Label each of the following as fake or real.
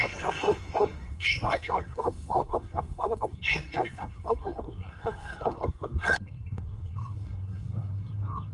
fake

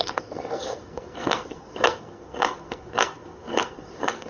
fake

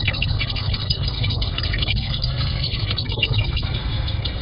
fake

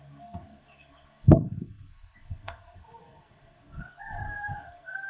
fake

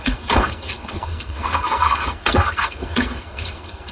fake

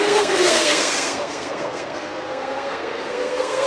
fake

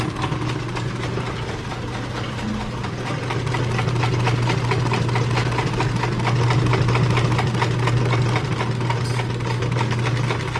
real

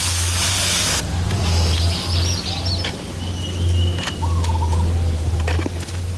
real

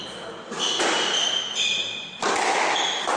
real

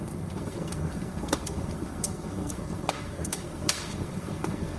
fake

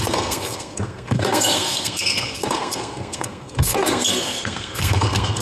fake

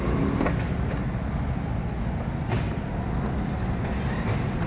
real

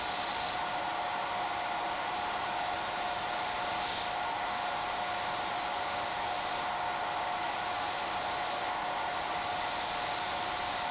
real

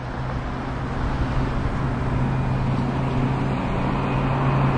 real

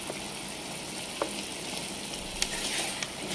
real